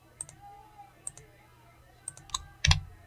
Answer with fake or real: real